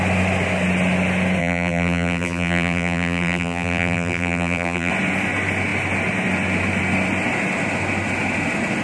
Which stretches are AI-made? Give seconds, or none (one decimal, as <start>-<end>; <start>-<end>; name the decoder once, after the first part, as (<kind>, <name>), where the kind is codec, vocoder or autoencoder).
1.4-4.9 (vocoder, BigVGAN v2)

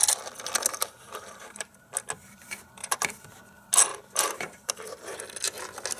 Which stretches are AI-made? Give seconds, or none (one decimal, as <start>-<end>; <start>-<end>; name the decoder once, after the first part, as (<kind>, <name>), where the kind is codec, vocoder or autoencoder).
0.8-1.9 (vocoder, BigVGAN v2); 2.8-3.4; 3.9-5.2

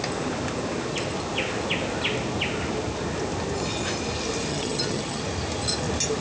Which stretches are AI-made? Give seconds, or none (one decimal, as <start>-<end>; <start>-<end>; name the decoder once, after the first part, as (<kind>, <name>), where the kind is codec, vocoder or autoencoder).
4.5-5.2 (vocoder, HiFi-GAN)

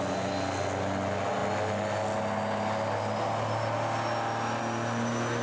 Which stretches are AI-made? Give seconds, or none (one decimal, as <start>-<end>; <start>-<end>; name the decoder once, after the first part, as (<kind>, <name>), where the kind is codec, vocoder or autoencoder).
none

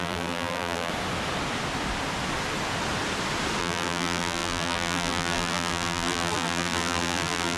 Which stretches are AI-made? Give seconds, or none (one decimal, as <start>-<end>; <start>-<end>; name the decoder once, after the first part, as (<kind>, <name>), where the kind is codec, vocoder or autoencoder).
0.0-0.9 (vocoder, BigVGAN v2); 3.6-7.6

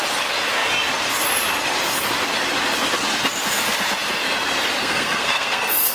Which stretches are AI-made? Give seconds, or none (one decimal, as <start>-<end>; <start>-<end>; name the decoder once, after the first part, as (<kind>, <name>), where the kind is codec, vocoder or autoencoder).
4.8-5.9 (codec, SNAC)